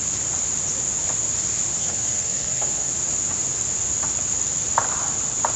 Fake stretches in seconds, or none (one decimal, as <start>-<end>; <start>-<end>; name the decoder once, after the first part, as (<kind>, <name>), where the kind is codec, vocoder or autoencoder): 1.8-2.9 (codec, SNAC)